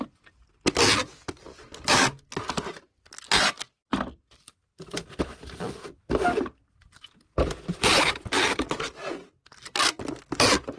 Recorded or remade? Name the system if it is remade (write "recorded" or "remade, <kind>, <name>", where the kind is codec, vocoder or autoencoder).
recorded